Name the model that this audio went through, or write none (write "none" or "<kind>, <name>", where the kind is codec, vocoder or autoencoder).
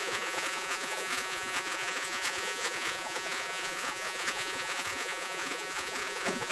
vocoder, Vocos